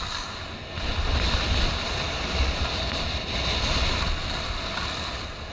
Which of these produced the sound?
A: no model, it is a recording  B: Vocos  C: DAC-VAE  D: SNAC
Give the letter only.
A